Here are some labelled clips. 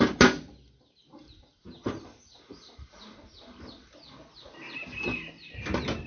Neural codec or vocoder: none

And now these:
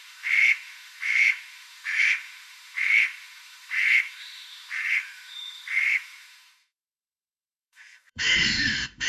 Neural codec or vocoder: autoencoder, DAC-VAE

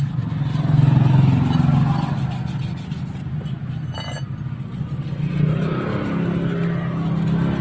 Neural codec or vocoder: none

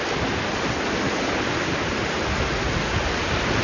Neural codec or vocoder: none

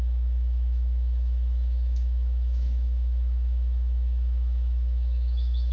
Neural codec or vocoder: autoencoder, DAC-VAE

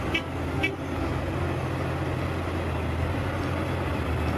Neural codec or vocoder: none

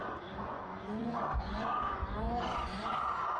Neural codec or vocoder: vocoder, Vocos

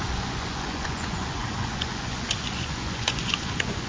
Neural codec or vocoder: vocoder, Vocos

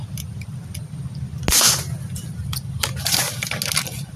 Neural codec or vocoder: none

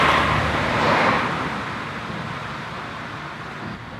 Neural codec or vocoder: none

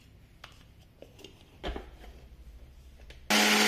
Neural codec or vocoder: none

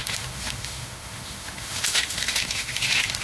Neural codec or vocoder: autoencoder, DAC-VAE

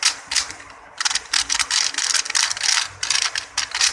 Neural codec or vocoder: none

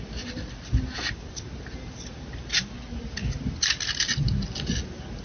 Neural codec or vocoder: none